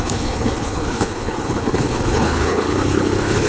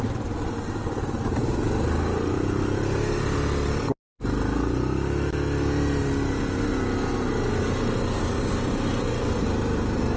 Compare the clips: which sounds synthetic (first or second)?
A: first